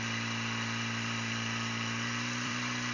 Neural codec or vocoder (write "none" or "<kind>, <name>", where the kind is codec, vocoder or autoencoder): vocoder, BigVGAN v2